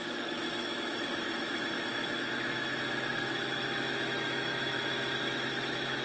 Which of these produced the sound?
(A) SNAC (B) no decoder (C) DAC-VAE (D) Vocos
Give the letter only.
C